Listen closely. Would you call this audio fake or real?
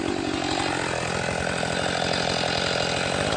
real